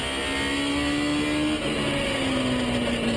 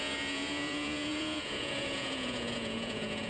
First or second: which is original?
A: first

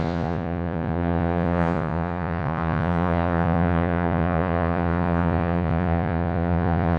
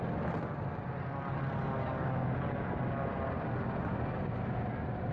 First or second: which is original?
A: second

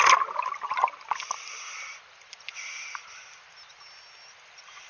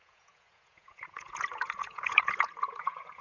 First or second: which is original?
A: first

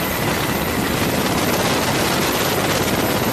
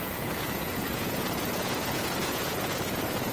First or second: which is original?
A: first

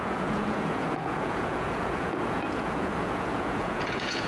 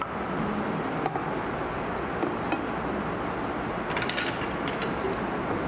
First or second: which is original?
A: second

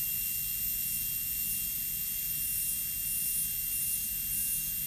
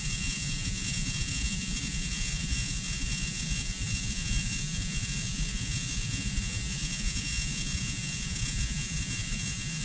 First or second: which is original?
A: first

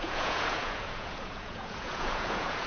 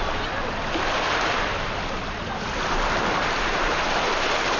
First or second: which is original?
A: second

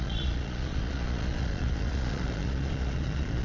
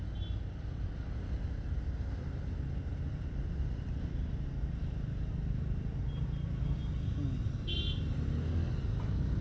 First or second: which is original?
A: second